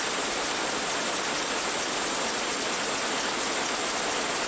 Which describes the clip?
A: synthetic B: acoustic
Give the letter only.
B